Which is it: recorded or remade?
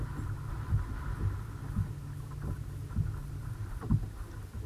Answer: recorded